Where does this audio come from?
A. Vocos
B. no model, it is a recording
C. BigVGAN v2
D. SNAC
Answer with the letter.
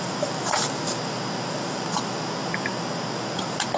B